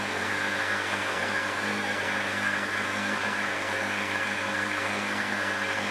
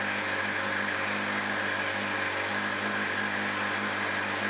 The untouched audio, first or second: second